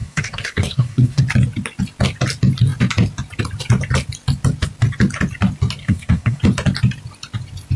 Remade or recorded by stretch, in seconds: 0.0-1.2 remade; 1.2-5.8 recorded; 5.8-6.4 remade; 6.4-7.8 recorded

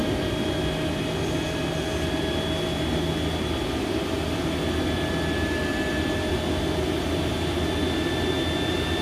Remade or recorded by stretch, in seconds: 0.0-9.0 recorded

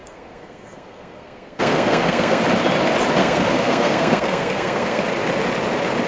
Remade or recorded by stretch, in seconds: 0.0-2.4 remade; 2.4-3.2 recorded; 3.2-5.0 remade; 5.0-6.1 recorded

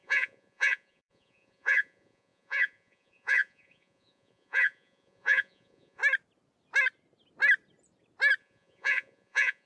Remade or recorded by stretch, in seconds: 0.0-6.0 remade; 6.0-8.4 recorded; 8.4-9.7 remade